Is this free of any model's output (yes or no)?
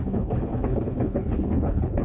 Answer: no